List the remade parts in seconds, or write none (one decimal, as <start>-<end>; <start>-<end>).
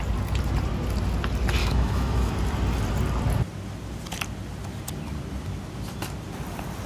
1.6-2.3